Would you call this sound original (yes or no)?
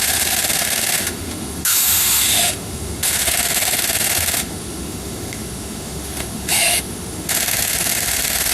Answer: no